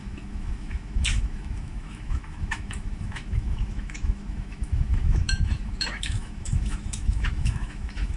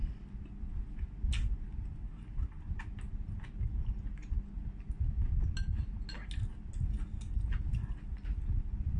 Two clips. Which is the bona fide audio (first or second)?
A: second